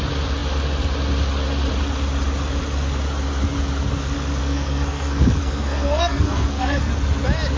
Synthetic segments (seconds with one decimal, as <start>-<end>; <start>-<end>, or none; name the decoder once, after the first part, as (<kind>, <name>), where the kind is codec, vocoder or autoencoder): 4.4-6.9 (codec, SNAC)